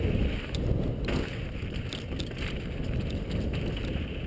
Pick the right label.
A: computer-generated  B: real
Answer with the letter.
B